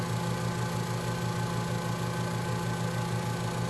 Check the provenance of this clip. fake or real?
real